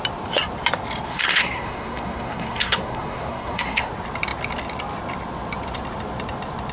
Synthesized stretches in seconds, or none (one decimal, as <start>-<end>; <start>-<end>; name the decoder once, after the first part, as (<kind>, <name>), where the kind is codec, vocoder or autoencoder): 1.1-3.9 (codec, SNAC)